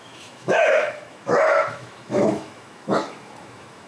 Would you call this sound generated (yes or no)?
yes